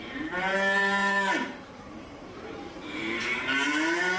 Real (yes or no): no